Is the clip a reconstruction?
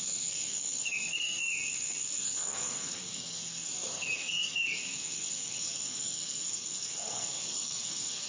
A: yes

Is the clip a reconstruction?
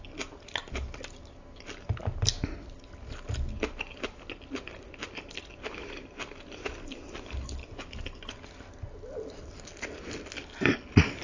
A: no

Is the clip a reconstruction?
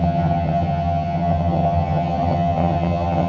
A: yes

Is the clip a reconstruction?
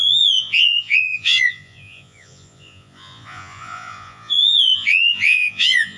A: yes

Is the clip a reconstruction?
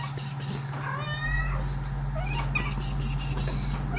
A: no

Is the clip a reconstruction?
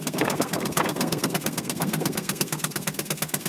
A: yes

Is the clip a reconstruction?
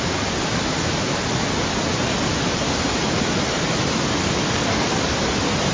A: no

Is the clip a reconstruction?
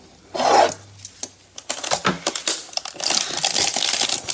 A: no